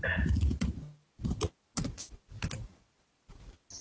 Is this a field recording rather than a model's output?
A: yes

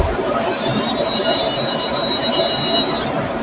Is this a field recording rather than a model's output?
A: no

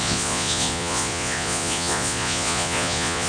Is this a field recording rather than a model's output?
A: no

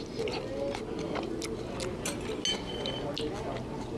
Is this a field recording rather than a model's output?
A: yes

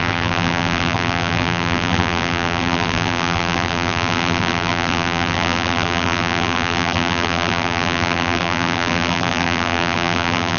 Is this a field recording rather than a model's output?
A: no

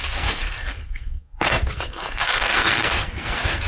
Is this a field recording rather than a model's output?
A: no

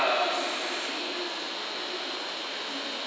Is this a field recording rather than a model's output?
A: yes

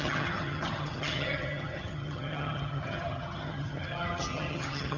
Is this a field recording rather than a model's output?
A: no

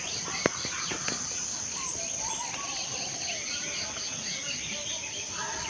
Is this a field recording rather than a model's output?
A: yes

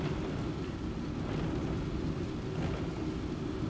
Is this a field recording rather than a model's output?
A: yes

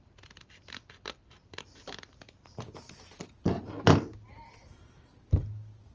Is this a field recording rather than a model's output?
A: yes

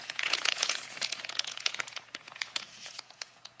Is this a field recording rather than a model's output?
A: no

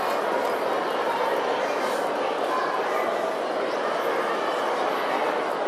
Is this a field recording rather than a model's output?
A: yes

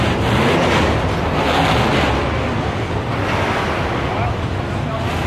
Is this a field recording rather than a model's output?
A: yes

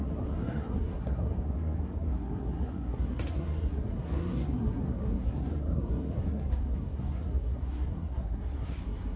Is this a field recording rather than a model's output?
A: no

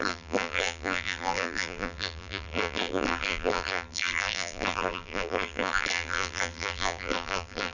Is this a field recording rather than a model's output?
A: no